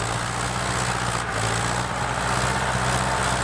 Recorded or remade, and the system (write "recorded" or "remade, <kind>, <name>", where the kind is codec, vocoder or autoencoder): recorded